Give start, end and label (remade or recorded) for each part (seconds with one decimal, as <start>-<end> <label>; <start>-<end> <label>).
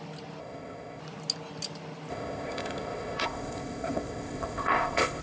0.0-0.4 recorded; 0.4-1.0 remade; 1.0-2.1 recorded; 2.1-5.2 remade